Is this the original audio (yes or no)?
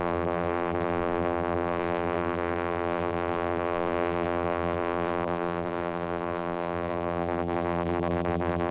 no